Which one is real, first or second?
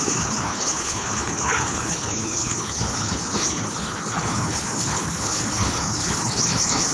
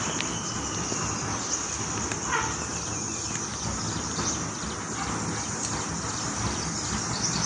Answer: second